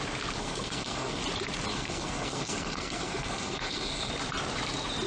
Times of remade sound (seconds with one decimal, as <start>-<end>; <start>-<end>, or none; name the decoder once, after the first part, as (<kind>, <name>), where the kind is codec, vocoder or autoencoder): 0.4-1.2 (codec, SNAC); 1.7-4.1